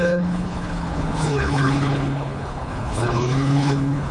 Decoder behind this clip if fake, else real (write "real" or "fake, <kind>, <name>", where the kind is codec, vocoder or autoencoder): fake, codec, HILCodec